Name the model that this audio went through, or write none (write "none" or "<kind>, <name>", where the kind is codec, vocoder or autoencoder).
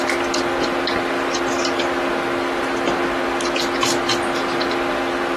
none